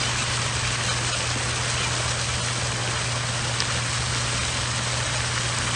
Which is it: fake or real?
real